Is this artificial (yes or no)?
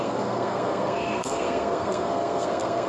yes